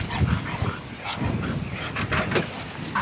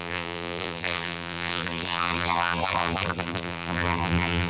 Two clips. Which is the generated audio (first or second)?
second